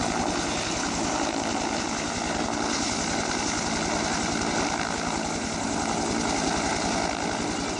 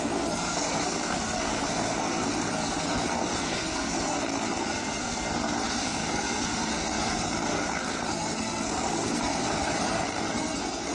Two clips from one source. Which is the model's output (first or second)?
second